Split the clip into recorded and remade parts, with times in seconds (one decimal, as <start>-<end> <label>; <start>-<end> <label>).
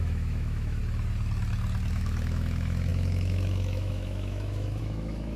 0.0-0.8 remade; 0.8-1.9 recorded; 1.9-5.4 remade